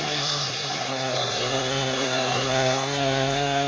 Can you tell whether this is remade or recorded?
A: remade